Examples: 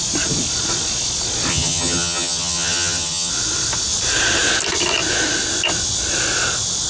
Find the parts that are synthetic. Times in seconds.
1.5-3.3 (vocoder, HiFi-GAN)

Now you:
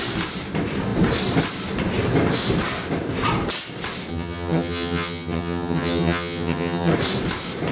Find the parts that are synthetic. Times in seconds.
4.1-6.9 (vocoder, HiFi-GAN)